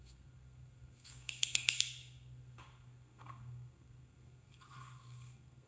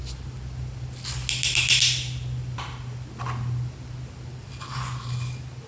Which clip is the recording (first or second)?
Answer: second